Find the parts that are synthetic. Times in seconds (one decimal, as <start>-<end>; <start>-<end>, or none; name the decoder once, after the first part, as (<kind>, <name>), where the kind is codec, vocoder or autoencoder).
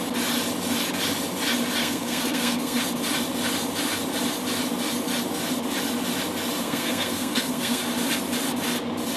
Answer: 1.8-2.8 (codec, SNAC); 6.6-7.8